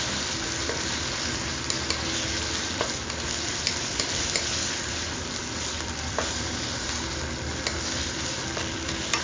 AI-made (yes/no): no